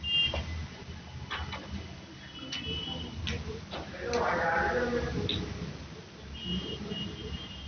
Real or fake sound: real